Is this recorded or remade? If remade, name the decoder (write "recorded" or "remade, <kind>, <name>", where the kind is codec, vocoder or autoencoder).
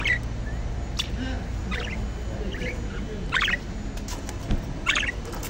recorded